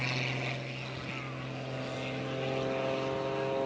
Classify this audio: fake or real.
real